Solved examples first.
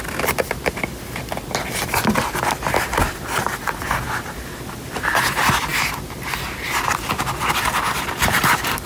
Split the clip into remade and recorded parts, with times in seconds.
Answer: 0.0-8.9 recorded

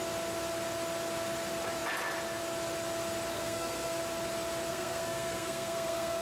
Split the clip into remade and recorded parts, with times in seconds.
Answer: 0.0-3.3 recorded; 3.3-4.0 remade; 4.0-4.7 recorded; 4.7-6.2 remade

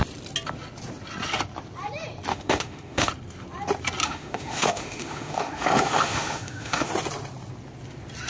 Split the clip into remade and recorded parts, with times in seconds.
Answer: 0.0-2.3 recorded; 2.3-3.1 remade; 3.1-4.0 recorded; 4.0-6.9 remade; 6.9-8.3 recorded

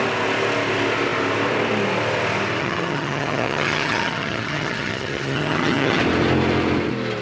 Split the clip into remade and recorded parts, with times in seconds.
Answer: 0.0-2.6 recorded; 2.6-6.0 remade; 6.0-7.2 recorded

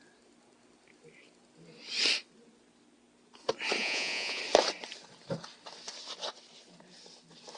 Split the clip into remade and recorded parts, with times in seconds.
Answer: 0.0-3.8 recorded; 3.8-4.4 remade; 4.4-7.6 recorded

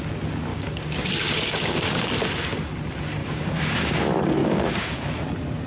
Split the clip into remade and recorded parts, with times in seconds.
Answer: 0.0-0.5 recorded; 0.5-2.1 remade; 2.1-3.2 recorded; 3.2-4.0 remade; 4.0-4.4 recorded; 4.4-5.1 remade; 5.1-5.7 recorded

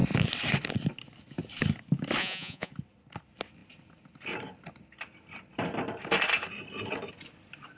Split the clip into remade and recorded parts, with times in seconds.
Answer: 0.0-2.2 recorded; 2.2-2.7 remade; 2.7-7.8 recorded